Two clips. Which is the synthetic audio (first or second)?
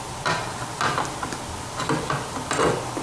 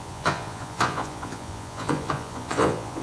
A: second